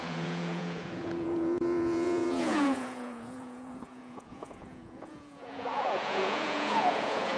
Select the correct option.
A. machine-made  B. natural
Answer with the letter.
A